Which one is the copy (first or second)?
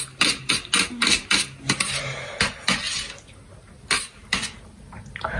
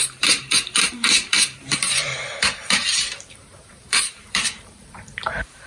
second